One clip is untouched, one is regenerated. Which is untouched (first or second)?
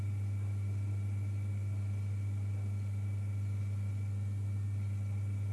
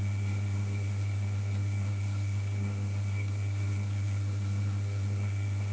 first